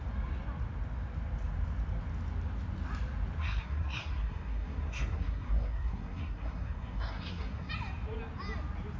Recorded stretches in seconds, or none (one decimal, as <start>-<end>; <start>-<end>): 0.0-3.4; 7.7-9.0